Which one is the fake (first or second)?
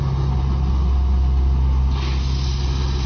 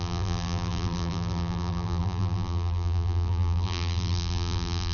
second